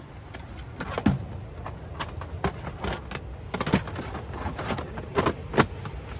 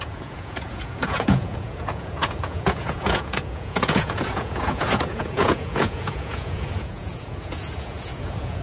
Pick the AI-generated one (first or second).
second